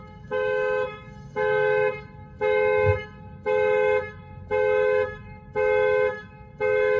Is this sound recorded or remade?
remade